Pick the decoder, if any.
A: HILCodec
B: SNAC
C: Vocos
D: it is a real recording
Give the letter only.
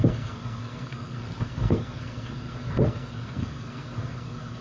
B